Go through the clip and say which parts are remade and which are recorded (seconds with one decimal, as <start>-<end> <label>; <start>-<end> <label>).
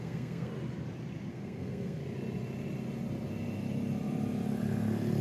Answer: 0.0-0.5 remade; 0.5-1.3 recorded; 1.3-2.0 remade; 2.0-5.2 recorded